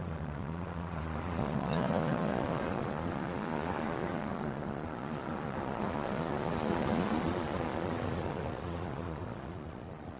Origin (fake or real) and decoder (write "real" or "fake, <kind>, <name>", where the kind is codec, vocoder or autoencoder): fake, vocoder, Vocos